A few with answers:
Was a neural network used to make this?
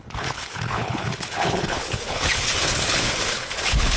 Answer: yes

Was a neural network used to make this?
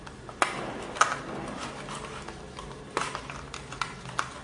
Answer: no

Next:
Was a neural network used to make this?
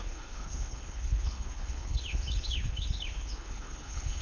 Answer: yes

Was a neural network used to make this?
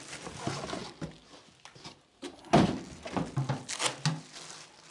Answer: no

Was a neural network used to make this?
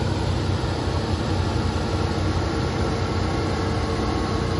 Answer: no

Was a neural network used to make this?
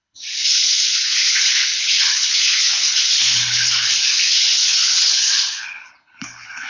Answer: yes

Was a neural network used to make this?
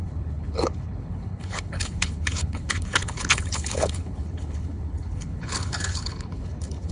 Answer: yes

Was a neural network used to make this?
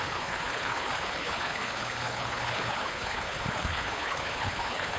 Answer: yes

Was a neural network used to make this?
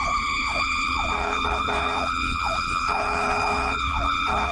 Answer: yes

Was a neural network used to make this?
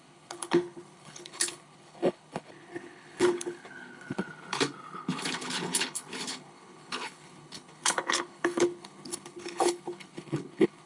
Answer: yes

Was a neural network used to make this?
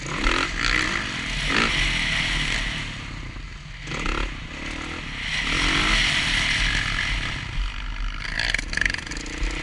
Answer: no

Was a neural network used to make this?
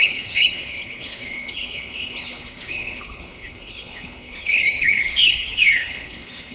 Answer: yes